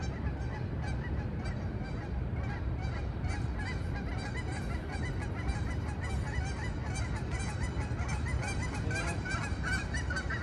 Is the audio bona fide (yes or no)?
yes